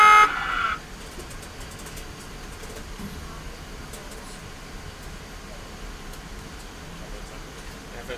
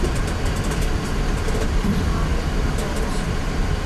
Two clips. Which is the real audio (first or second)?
first